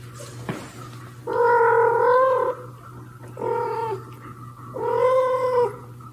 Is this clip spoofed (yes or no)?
no